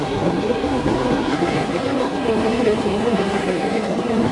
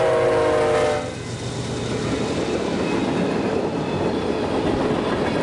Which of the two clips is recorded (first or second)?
second